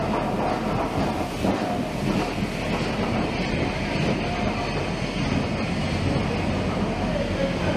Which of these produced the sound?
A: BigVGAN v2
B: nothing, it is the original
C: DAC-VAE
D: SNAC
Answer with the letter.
B